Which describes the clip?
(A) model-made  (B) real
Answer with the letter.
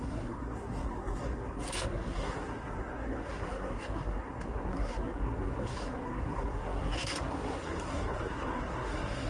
A